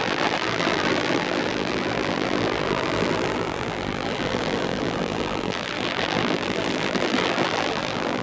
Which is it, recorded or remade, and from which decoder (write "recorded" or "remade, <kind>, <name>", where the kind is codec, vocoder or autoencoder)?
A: remade, vocoder, BigVGAN v2